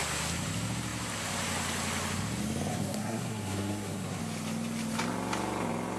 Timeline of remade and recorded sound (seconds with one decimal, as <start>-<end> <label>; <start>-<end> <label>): 0.0-2.7 recorded; 2.7-4.2 remade; 4.2-6.0 recorded